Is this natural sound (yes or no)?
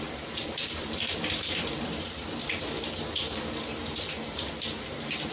no